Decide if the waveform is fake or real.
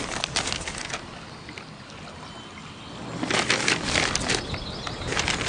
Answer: real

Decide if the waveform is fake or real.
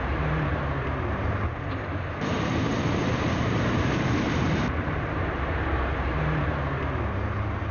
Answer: fake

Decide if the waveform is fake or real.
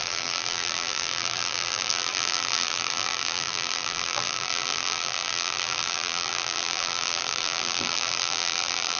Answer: fake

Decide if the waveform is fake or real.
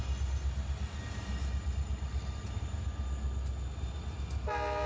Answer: real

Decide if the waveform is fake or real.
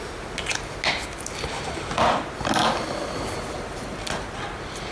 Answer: real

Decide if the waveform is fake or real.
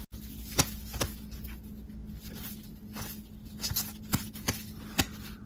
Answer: real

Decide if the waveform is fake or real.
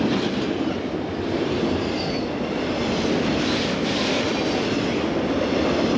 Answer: real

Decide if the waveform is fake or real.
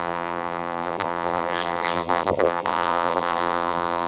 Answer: fake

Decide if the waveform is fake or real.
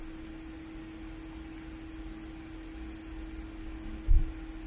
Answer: real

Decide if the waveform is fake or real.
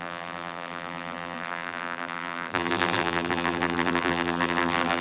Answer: fake